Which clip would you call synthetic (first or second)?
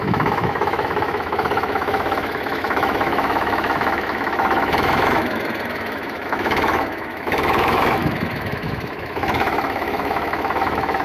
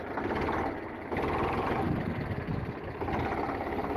first